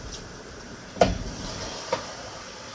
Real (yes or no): no